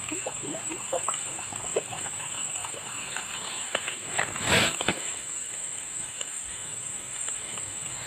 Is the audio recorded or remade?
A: remade